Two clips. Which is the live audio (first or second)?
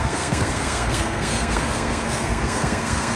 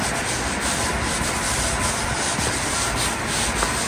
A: second